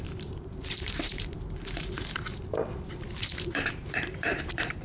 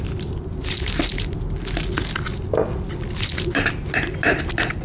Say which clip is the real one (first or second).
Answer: second